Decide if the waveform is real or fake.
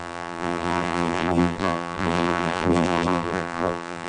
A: fake